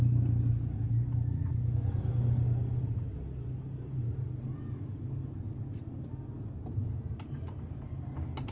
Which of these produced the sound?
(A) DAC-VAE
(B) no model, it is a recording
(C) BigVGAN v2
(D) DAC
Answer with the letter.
B